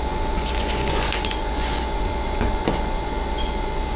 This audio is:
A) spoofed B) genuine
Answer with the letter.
A